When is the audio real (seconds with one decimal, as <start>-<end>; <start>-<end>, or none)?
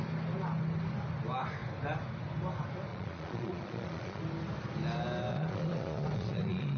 0.0-2.9; 4.2-5.3